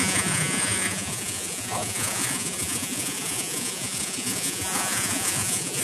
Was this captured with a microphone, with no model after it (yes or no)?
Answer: no